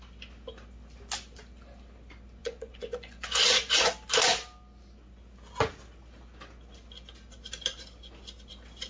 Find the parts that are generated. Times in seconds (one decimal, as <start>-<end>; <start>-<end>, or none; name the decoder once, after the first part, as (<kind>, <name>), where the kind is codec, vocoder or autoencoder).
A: 2.4-3.9 (vocoder, Vocos)